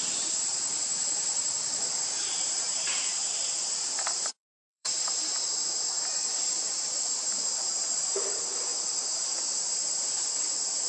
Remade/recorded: remade